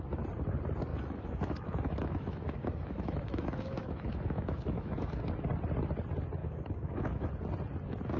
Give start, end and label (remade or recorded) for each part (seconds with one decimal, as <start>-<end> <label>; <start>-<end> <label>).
0.0-0.9 recorded; 0.9-5.2 remade; 5.2-6.4 recorded; 6.4-7.3 remade; 7.3-8.2 recorded

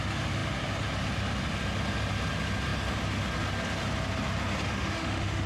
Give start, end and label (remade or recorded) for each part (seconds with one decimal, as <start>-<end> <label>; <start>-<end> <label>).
0.0-4.6 recorded; 4.6-5.5 remade

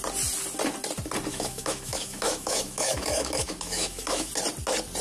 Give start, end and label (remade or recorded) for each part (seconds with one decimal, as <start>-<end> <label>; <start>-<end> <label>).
0.0-1.3 recorded; 1.3-4.3 remade; 4.3-5.0 recorded

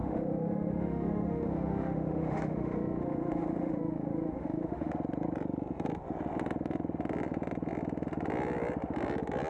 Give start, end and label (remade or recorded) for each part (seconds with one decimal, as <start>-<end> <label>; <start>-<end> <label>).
0.0-4.9 remade; 4.9-9.5 recorded